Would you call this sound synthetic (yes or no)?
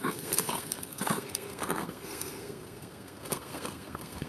yes